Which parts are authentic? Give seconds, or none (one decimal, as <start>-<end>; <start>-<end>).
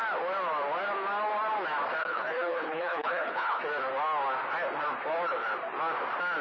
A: 0.0-2.0; 3.6-6.4